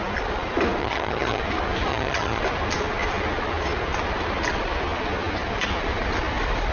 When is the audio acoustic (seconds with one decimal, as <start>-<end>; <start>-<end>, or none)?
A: 0.0-0.8; 1.4-1.9; 2.4-6.7